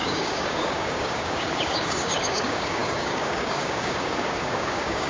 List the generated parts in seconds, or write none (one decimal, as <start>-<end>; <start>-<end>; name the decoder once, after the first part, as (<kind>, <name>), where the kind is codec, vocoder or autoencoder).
0.0-5.1 (codec, DAC)